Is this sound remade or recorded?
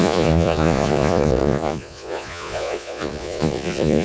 remade